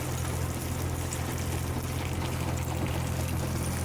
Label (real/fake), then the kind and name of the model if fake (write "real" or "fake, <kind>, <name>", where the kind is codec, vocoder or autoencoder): real